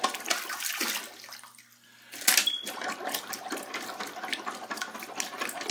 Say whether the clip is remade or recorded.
recorded